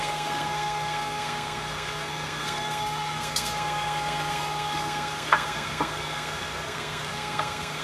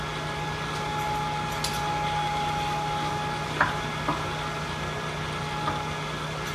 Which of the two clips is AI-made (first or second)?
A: first